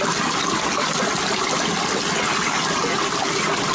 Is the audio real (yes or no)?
yes